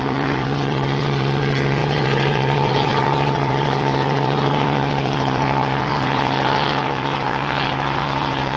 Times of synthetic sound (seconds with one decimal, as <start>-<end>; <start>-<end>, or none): 0.0-8.6